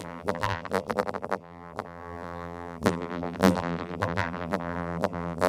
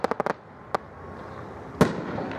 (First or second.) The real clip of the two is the second